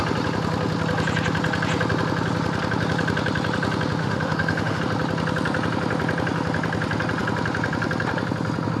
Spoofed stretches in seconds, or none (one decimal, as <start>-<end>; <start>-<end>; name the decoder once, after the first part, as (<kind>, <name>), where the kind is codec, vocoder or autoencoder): 4.0-4.8 (autoencoder, DAC-VAE)